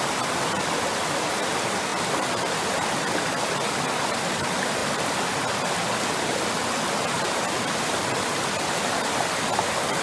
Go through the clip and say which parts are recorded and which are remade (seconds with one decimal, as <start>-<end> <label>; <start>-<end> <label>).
0.0-10.0 recorded